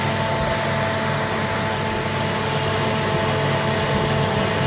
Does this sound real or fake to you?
real